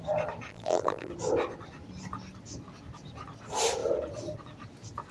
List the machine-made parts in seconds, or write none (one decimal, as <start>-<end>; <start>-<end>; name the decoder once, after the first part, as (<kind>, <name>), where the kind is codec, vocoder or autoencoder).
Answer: 0.5-1.1 (vocoder, BigVGAN v2)